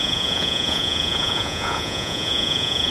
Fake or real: fake